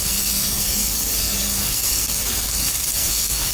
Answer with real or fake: fake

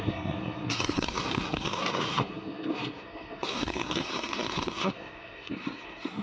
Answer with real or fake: fake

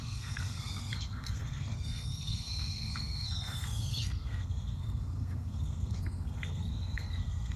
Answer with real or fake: fake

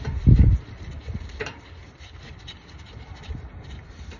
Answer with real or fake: real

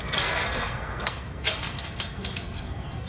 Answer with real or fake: fake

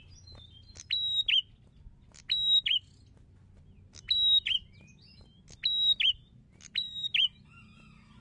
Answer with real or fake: real